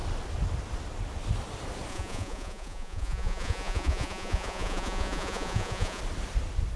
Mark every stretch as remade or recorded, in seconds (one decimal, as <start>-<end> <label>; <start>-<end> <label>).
0.0-1.9 recorded; 1.9-6.0 remade; 6.0-6.8 recorded